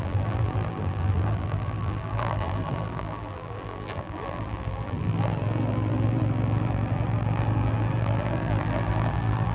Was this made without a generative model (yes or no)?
no